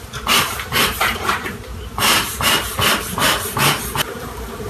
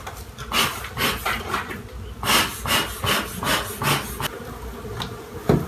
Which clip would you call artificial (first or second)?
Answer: first